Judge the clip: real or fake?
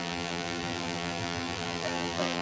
fake